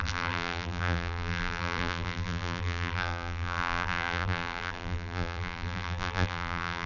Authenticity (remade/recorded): remade